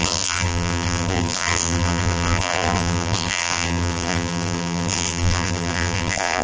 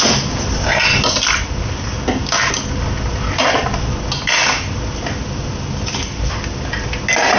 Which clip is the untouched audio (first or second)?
second